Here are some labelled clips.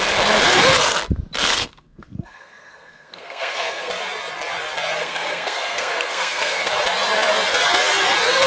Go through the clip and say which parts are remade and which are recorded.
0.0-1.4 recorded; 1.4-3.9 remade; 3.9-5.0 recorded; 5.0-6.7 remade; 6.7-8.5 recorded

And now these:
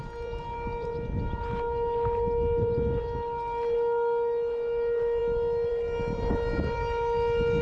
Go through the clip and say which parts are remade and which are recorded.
0.0-7.6 recorded

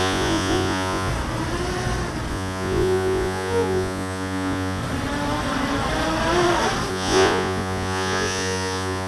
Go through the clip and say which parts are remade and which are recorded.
0.0-1.1 remade; 1.1-2.3 recorded; 2.3-4.8 remade; 4.8-6.9 recorded; 6.9-9.1 remade